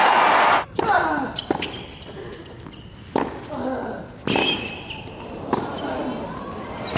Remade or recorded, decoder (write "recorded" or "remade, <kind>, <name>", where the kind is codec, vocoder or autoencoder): recorded